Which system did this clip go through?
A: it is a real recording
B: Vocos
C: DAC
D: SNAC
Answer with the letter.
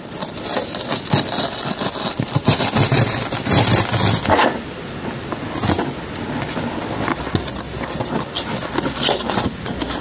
A